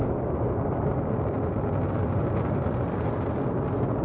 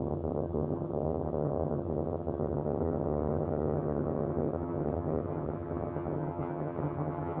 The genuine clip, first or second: first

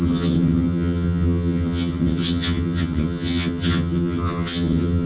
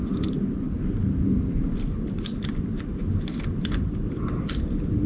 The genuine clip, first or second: second